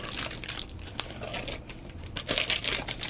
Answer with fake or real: real